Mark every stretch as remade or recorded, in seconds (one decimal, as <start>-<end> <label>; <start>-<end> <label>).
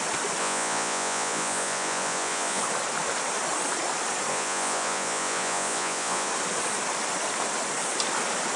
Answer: 0.0-0.4 recorded; 0.4-2.6 remade; 2.6-4.3 recorded; 4.3-6.3 remade; 6.3-8.6 recorded